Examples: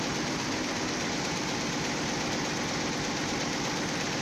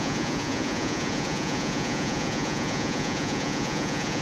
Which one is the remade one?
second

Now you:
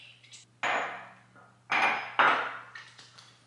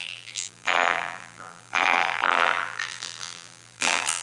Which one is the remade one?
second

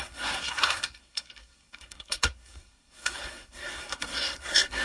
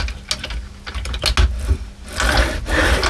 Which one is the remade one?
first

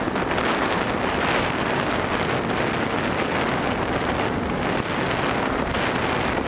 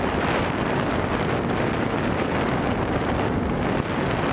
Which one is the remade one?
second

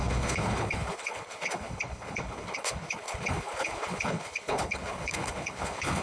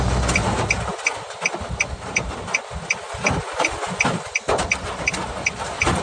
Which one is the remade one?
first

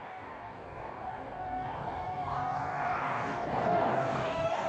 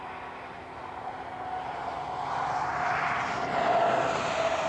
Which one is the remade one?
first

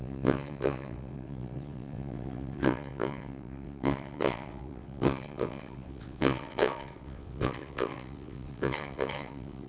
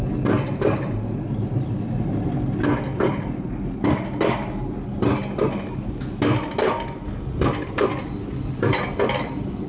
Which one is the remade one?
first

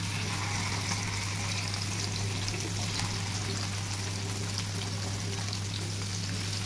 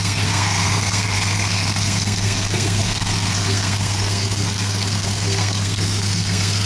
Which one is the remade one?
second